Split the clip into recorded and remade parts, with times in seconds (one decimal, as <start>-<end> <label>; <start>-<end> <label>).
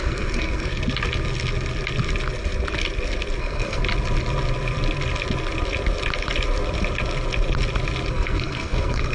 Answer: 0.0-0.7 remade; 0.7-3.4 recorded; 3.4-3.8 remade; 3.8-8.1 recorded; 8.1-9.1 remade